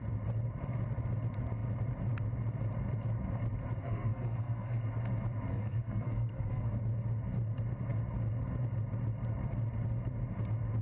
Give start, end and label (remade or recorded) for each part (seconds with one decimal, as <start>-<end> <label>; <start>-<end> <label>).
0.0-3.8 recorded; 3.8-4.8 remade; 4.8-5.5 recorded; 5.5-6.8 remade; 6.8-10.8 recorded